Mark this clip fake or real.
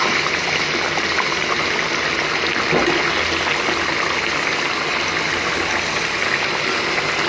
real